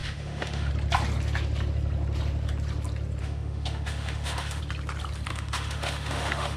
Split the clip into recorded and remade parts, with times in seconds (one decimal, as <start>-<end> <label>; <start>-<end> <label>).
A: 0.0-0.7 remade; 0.7-3.2 recorded; 3.2-4.6 remade; 4.6-5.3 recorded; 5.3-6.6 remade